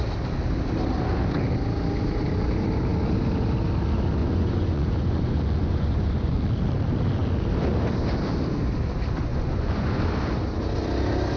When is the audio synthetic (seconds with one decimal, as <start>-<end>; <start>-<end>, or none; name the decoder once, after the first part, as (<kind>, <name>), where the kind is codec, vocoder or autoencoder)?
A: 4.2-6.4 (vocoder, Vocos); 9.3-10.0